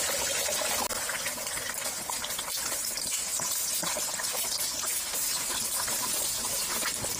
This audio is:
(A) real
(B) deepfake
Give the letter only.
A